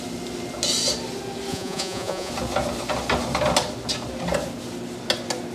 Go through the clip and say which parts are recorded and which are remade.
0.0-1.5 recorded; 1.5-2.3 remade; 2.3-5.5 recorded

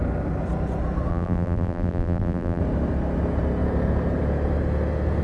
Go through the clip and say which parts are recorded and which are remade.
0.0-1.1 recorded; 1.1-2.6 remade; 2.6-5.2 recorded

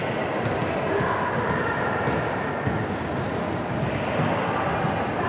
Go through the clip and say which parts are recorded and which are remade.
0.0-5.3 recorded